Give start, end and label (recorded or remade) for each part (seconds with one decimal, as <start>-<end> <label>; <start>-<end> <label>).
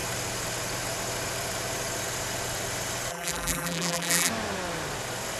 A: 0.0-3.1 recorded; 3.1-4.3 remade; 4.3-5.4 recorded